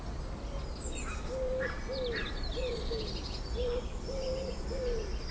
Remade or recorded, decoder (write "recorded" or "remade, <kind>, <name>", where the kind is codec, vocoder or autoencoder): recorded